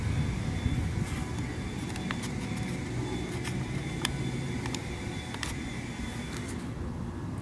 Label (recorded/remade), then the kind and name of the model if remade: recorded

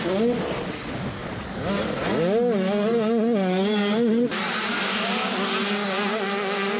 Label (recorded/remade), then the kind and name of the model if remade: recorded